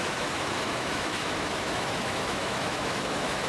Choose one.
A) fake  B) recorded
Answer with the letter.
A